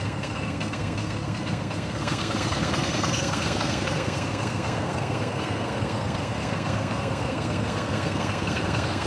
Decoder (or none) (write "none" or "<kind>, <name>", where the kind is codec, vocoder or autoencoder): codec, SNAC